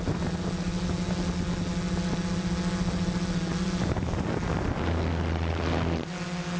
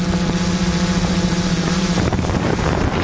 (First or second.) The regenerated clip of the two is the second